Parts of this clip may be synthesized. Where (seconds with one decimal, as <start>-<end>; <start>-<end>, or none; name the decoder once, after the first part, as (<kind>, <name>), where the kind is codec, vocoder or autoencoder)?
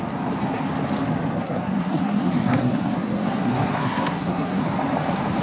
1.4-4.6 (codec, SNAC)